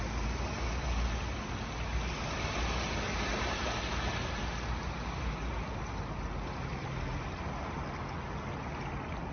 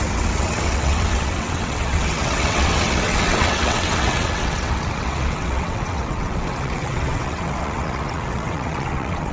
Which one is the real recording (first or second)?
first